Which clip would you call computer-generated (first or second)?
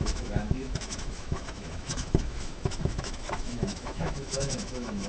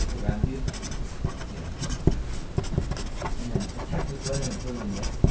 first